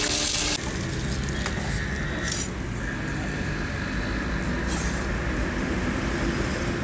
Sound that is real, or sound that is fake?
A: real